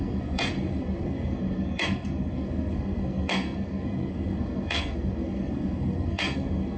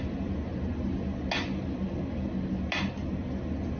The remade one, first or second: first